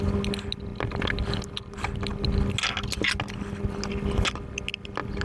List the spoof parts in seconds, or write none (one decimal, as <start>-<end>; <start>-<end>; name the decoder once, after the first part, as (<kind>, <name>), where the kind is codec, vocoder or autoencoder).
none